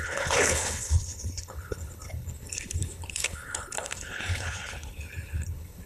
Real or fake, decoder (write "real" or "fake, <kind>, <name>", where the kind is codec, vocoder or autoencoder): fake, codec, HILCodec